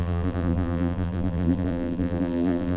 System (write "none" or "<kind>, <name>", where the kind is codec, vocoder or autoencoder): vocoder, BigVGAN v2